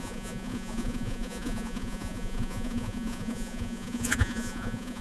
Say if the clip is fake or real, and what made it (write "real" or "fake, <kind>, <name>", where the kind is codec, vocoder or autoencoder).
fake, vocoder, Vocos